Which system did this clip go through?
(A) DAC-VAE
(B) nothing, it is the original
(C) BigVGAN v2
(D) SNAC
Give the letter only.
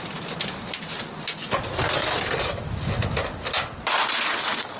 B